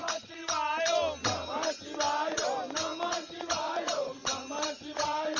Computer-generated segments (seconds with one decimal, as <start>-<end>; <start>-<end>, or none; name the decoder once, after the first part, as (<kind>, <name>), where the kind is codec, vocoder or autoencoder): 0.0-0.4 (vocoder, Vocos); 3.1-4.2; 4.8-5.4